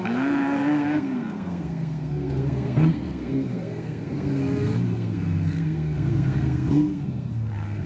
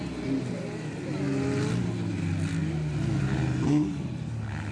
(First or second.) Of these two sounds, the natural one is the second